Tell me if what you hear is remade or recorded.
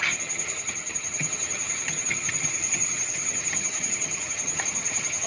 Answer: remade